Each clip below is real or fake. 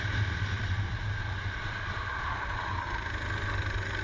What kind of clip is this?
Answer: real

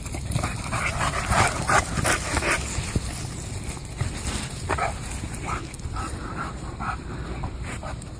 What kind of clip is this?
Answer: real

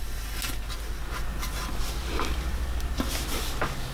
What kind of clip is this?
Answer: real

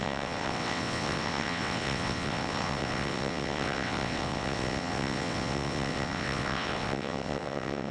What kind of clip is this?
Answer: fake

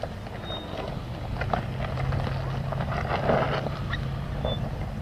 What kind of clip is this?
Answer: real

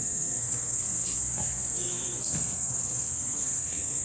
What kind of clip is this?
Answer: fake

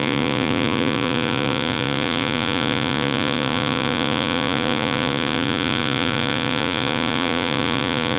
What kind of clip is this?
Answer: fake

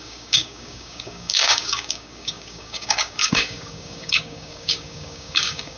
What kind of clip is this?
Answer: fake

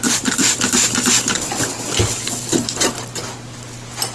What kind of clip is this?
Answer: real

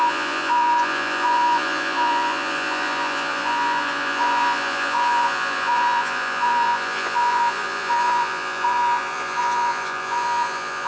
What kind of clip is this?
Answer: fake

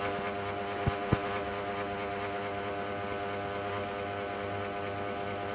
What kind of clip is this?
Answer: real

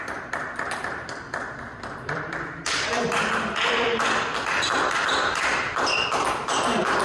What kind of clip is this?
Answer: fake